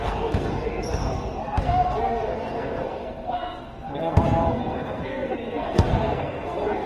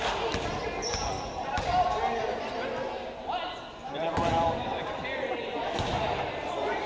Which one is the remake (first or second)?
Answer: first